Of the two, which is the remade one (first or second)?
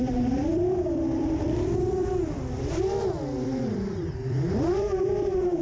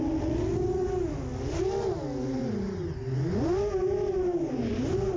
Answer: first